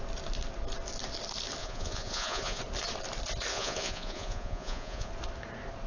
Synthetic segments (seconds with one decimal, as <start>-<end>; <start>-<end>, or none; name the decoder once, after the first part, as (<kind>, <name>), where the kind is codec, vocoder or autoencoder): 1.6-2.6 (vocoder, Vocos); 3.5-5.1